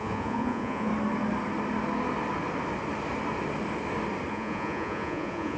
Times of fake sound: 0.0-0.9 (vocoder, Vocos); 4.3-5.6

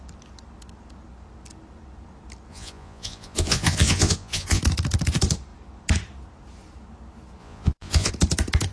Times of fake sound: 2.5-4.6 (vocoder, Vocos); 7.4-8.1

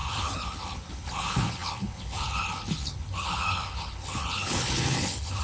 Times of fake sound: 0.0-5.4 (codec, HILCodec)

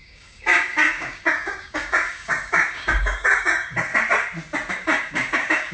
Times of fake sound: 0.0-3.9 (codec, DAC); 4.7-5.7

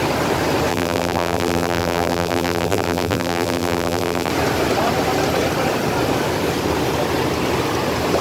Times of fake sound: 0.7-4.3 (vocoder, BigVGAN v2)